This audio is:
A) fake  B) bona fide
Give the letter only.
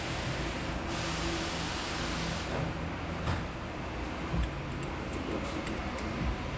B